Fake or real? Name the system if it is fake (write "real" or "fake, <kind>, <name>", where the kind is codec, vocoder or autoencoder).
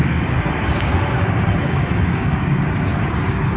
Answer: fake, codec, DAC